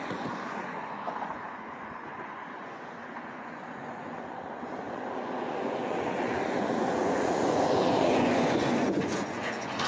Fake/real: fake